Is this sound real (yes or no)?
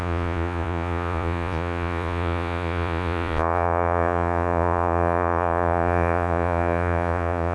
no